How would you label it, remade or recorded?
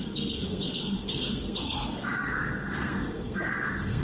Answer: remade